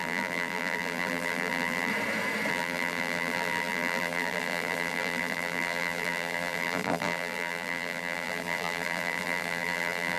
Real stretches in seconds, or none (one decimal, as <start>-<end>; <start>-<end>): 1.9-2.5

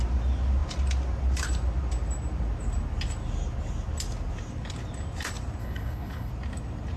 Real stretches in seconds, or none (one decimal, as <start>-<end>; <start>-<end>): 0.0-5.6; 6.3-7.0

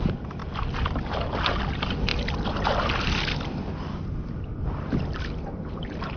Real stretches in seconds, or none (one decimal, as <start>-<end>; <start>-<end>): 0.0-6.2

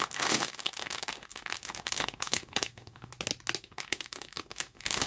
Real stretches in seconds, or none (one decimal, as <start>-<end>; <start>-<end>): 3.1-3.6

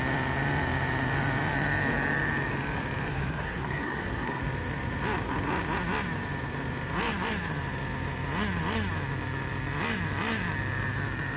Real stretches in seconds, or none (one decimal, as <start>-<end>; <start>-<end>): 0.0-3.1; 4.4-11.4

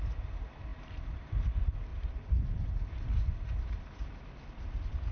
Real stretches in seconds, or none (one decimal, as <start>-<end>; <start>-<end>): 0.0-0.7; 1.4-1.9; 2.7-5.1

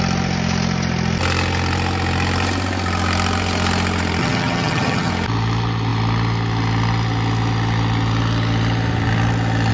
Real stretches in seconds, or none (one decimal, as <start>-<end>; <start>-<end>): 0.0-4.2; 5.1-9.7

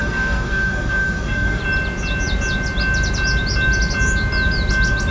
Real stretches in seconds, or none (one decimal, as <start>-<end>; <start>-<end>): 1.6-5.1